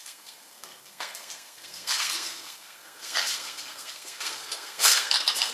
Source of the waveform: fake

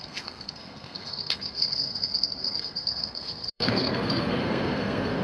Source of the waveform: fake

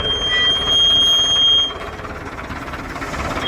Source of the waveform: real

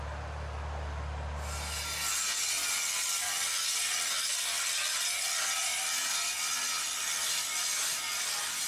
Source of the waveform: real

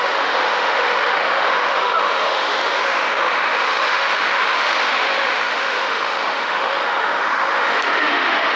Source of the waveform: fake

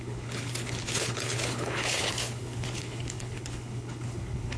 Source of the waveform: fake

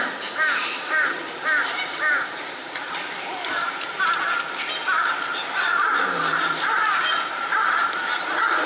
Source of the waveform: fake